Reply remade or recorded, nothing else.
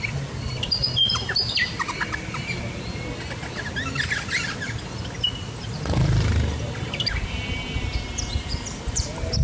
recorded